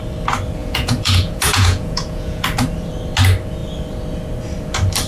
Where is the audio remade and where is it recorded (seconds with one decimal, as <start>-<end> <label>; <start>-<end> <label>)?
0.0-0.6 recorded; 0.6-2.4 remade; 2.4-5.1 recorded